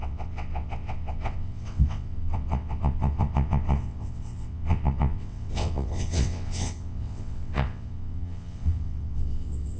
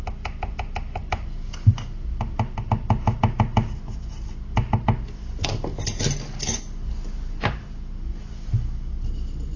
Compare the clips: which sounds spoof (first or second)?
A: first